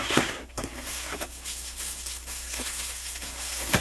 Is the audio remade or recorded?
remade